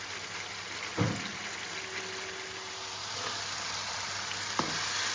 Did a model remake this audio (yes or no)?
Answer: no